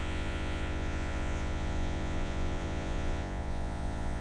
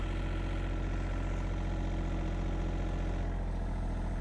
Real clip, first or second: second